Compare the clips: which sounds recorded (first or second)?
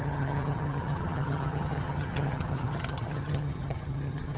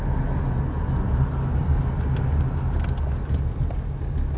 second